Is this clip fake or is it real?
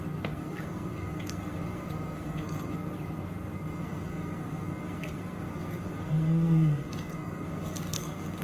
fake